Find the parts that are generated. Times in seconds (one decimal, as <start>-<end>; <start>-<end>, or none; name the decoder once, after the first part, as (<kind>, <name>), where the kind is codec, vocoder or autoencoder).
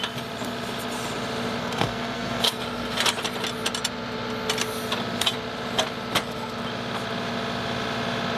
1.6-2.6 (codec, SNAC)